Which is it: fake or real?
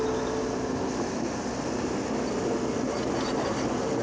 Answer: real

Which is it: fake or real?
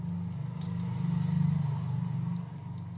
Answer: real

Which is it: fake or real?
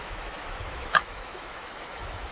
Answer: fake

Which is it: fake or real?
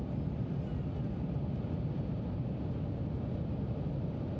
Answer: real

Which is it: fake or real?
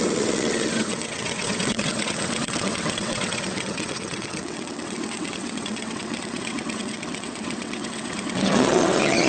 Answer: fake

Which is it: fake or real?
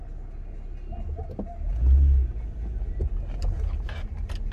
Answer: real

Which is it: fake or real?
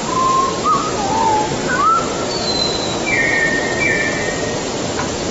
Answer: real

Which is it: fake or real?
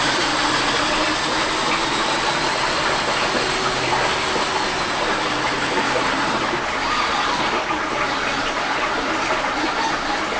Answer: real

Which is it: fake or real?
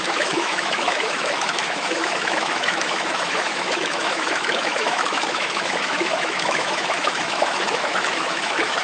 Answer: fake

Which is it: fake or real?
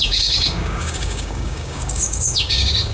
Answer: fake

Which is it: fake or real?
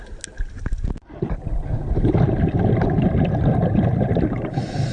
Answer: real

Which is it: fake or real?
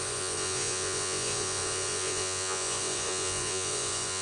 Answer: fake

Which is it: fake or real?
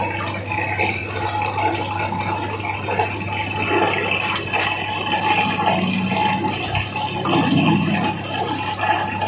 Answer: real